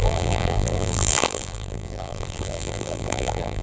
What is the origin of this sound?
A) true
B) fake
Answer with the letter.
B